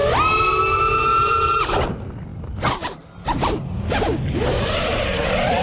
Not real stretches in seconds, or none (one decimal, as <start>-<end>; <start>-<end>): 0.0-0.6; 1.1-1.7